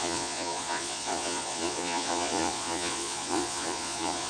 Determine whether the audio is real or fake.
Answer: fake